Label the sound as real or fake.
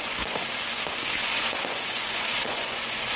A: fake